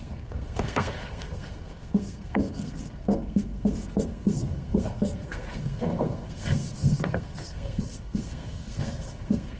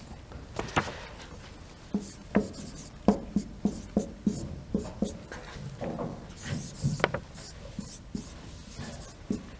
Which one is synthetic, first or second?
first